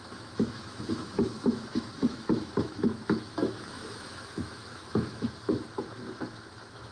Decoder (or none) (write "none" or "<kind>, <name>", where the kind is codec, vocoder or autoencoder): autoencoder, DAC-VAE